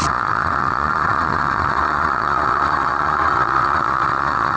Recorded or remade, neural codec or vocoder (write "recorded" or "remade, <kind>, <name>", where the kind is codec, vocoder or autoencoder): remade, vocoder, Vocos